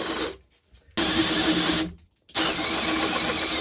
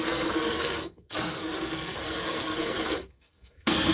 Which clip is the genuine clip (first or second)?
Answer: first